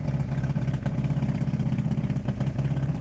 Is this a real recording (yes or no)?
no